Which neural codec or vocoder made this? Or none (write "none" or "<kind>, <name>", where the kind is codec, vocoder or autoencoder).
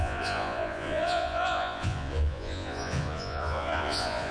vocoder, Vocos